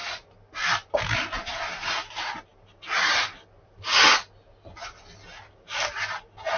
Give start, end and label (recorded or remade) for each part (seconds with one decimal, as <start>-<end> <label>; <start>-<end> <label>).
0.0-6.6 recorded